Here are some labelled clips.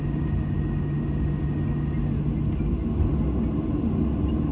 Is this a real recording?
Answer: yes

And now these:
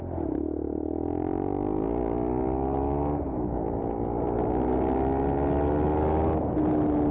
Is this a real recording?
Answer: yes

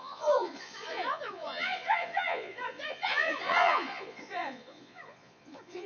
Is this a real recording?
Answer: no